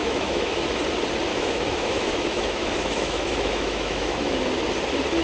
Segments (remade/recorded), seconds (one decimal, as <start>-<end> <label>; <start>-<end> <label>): 0.0-0.8 remade; 0.8-1.3 recorded; 1.3-4.4 remade; 4.4-5.2 recorded